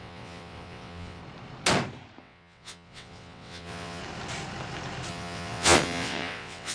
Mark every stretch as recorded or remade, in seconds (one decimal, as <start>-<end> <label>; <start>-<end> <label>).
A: 0.0-1.2 remade; 1.2-2.2 recorded; 2.2-4.0 remade; 4.0-5.1 recorded; 5.1-6.7 remade